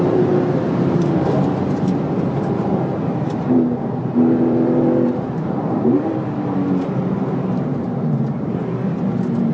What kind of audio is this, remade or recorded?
remade